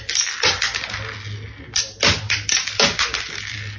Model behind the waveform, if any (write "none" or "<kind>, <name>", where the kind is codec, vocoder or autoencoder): none